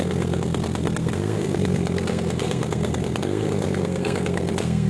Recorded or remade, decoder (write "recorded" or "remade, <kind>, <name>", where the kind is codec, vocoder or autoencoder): remade, codec, SNAC